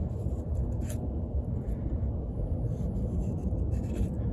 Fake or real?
real